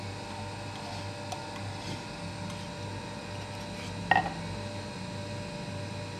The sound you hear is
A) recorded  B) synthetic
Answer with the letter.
A